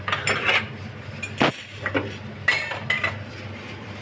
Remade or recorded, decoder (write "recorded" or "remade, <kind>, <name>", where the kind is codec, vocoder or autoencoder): recorded